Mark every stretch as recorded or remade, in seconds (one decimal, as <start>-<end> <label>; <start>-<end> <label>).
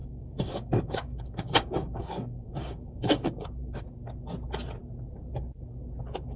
0.0-3.8 remade; 3.8-6.4 recorded